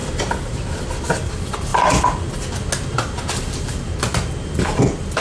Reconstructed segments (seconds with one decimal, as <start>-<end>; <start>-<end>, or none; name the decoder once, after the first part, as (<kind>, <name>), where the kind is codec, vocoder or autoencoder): none